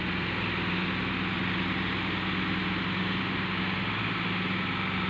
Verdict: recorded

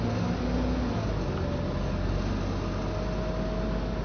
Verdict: recorded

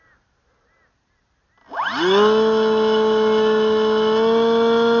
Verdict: recorded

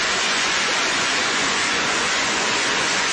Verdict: remade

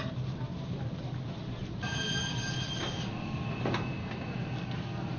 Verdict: recorded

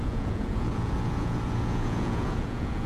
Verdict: remade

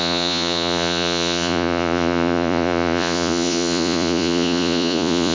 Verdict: remade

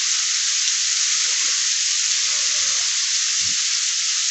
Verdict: recorded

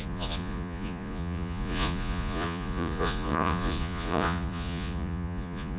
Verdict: remade